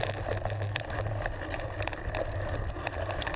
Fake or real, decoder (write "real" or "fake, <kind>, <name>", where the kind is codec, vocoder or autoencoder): real